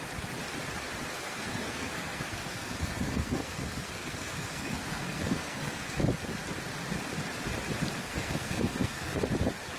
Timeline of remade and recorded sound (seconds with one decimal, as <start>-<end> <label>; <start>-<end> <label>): 0.0-1.1 recorded; 1.1-6.0 remade; 6.0-8.0 recorded; 8.0-9.2 remade; 9.2-9.8 recorded